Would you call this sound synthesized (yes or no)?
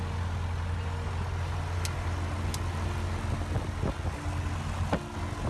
no